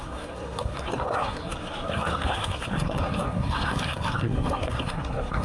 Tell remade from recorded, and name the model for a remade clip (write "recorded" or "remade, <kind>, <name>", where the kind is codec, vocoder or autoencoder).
remade, codec, SNAC